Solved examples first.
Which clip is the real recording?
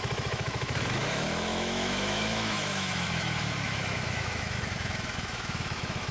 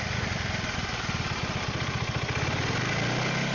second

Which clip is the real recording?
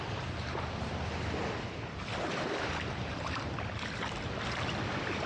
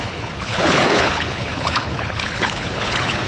first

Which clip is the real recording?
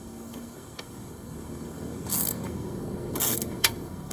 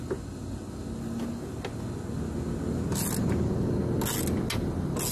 second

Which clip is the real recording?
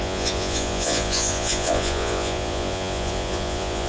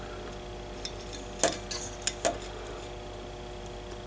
second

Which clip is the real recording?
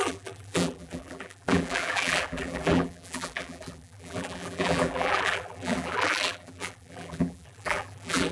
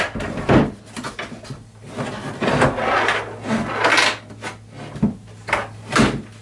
second